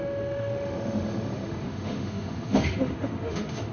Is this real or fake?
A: fake